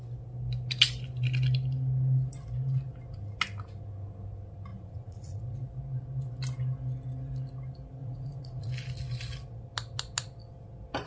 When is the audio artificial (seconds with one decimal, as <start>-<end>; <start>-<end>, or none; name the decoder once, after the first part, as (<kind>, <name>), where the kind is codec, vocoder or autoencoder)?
4.7-5.4 (vocoder, Vocos); 8.0-8.7